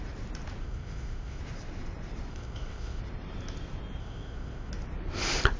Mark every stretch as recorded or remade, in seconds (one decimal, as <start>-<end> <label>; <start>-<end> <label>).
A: 0.0-0.6 recorded; 0.6-1.4 remade; 1.4-2.3 recorded; 2.3-3.0 remade; 3.0-4.0 recorded; 4.0-4.7 remade; 4.7-5.6 recorded

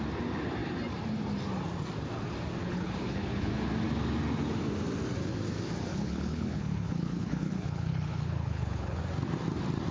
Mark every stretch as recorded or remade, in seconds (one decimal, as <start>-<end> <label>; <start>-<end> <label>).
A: 0.0-2.6 recorded; 2.6-3.5 remade; 3.5-5.9 recorded; 5.9-9.0 remade; 9.0-9.9 recorded

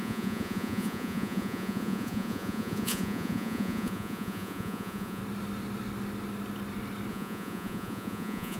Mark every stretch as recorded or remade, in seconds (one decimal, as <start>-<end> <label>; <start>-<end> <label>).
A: 0.0-5.2 remade; 5.2-7.1 recorded; 7.1-8.6 remade

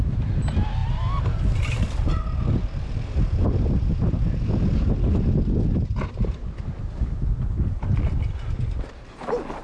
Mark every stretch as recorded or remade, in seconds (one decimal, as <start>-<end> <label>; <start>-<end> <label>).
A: 0.0-9.6 recorded

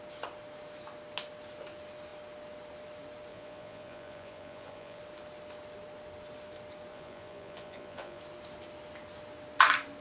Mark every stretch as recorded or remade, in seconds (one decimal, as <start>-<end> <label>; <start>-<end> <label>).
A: 0.0-3.3 recorded; 3.3-5.0 remade; 5.0-6.9 recorded; 6.9-8.2 remade; 8.2-10.0 recorded

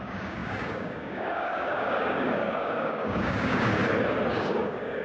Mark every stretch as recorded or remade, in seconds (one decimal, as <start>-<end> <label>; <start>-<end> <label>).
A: 0.0-3.8 remade; 3.8-4.3 recorded; 4.3-5.0 remade

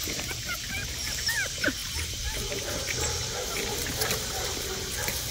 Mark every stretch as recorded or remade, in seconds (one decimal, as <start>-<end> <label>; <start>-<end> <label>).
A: 0.0-5.3 recorded

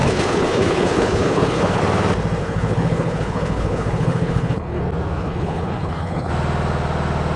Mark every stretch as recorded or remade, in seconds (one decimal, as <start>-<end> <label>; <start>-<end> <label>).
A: 0.0-1.8 remade; 1.8-2.4 recorded; 2.4-4.8 remade; 4.8-5.2 recorded; 5.2-6.3 remade; 6.3-7.4 recorded